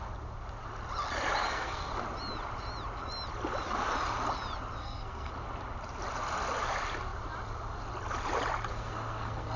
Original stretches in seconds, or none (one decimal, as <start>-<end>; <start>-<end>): 0.0-1.4; 1.9-4.8; 5.3-8.7